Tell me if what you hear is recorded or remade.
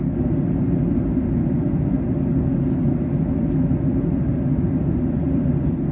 recorded